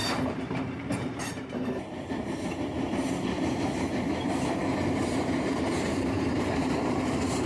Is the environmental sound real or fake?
fake